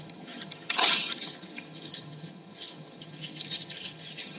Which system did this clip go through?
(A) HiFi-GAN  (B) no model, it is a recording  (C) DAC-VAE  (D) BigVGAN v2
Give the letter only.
A